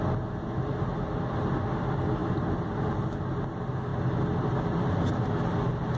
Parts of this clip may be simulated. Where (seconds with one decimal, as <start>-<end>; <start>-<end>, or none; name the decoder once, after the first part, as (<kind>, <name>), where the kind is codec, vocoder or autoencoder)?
none